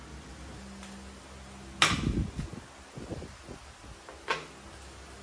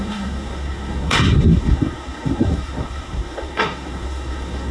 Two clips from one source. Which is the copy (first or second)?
second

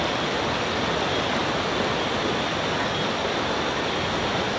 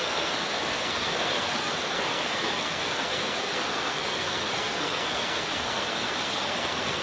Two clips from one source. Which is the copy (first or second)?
second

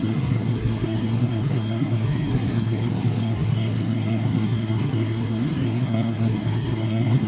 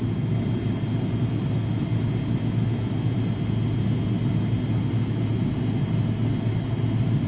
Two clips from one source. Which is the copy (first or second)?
first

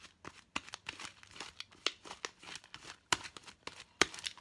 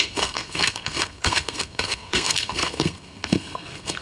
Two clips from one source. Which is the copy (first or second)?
second